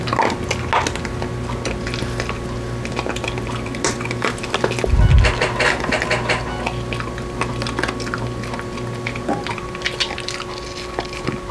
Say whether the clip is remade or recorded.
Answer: recorded